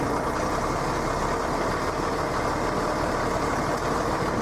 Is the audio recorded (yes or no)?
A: yes